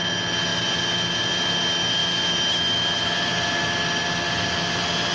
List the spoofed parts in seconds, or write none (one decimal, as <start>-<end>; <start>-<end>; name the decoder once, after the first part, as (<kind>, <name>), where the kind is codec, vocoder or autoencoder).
none